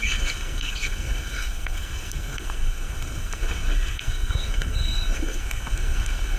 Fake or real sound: fake